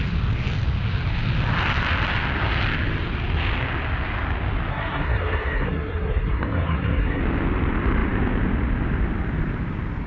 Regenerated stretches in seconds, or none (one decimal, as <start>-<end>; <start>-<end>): 4.7-7.2